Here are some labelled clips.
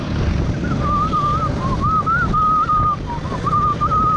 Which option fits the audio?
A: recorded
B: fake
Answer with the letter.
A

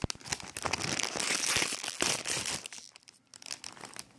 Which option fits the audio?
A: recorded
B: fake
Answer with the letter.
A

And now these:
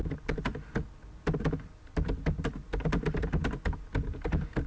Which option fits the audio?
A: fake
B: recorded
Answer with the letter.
B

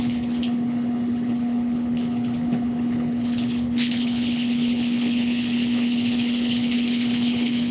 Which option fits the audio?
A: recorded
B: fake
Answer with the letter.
B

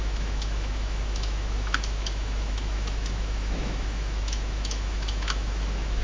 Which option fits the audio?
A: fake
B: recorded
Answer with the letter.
A